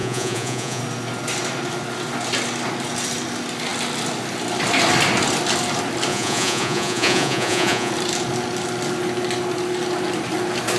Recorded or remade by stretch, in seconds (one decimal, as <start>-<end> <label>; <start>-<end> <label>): 0.0-0.8 remade; 0.8-6.1 recorded; 6.1-7.9 remade; 7.9-10.8 recorded